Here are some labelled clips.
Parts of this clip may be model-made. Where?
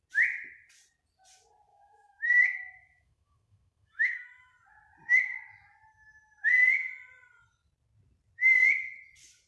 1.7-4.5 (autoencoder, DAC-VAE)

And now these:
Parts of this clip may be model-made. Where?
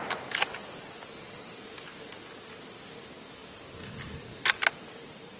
none